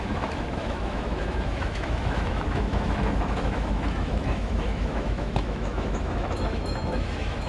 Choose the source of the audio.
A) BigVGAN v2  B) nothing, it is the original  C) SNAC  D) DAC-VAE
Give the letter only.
D